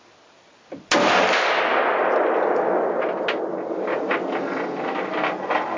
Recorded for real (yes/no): yes